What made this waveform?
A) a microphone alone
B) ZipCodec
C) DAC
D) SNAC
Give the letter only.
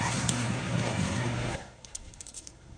D